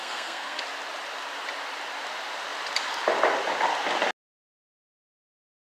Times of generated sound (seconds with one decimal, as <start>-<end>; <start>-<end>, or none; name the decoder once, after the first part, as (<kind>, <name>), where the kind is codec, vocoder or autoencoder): 0.0-0.6 (codec, SNAC)